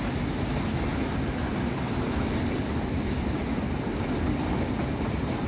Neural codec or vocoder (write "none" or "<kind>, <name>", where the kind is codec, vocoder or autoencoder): none